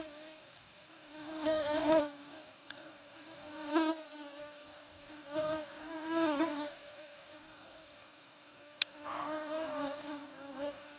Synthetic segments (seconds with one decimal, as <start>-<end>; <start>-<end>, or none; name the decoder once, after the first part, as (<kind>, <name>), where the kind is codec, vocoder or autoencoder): 0.0-3.7 (codec, DAC); 4.4-11.0